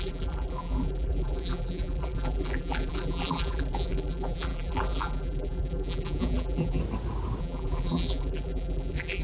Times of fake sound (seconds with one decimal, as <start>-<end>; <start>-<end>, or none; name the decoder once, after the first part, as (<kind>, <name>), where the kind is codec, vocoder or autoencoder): 0.0-6.8 (vocoder, BigVGAN v2); 7.4-9.2